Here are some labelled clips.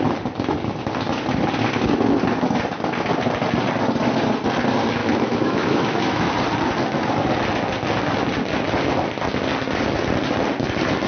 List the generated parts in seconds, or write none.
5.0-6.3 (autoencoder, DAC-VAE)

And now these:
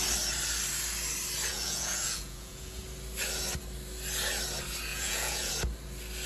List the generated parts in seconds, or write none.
1.5-2.8 (vocoder, Vocos); 4.9-5.5